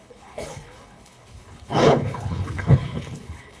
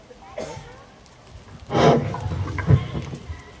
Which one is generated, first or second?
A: first